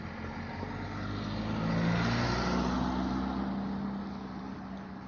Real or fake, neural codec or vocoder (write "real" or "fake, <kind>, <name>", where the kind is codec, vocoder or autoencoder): real